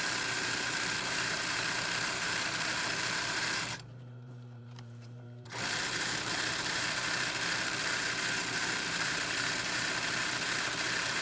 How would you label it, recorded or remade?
remade